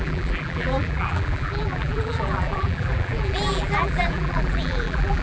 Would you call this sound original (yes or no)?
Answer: no